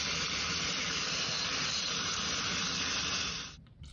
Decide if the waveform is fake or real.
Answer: fake